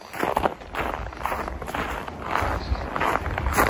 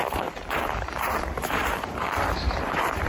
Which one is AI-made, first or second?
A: second